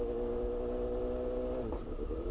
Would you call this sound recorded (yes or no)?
yes